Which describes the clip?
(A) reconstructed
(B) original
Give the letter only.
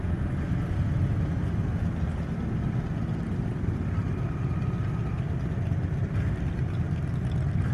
B